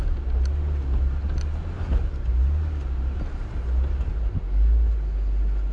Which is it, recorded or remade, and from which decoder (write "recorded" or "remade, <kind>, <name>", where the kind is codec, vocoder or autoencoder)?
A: recorded